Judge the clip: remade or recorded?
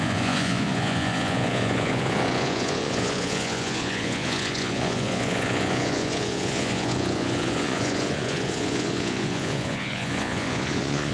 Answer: remade